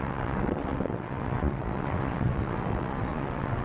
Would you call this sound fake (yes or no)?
yes